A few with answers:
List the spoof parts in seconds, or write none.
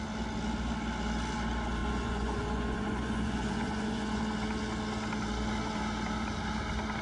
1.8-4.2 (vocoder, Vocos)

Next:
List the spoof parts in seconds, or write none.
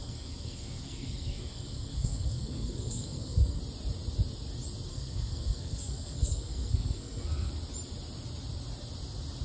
0.0-3.6 (codec, SNAC); 4.9-7.5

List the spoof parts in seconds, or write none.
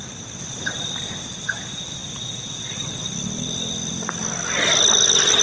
none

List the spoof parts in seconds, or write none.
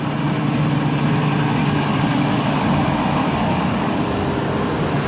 1.6-4.2 (codec, DAC)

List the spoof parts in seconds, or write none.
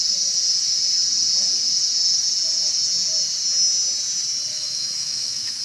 4.5-5.6 (autoencoder, DAC-VAE)